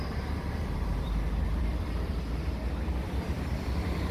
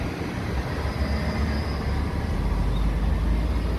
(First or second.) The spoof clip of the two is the first